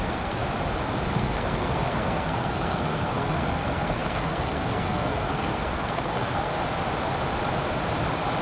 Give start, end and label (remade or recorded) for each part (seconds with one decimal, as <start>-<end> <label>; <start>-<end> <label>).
0.0-0.4 remade; 0.4-1.1 recorded; 1.1-6.5 remade; 6.5-8.4 recorded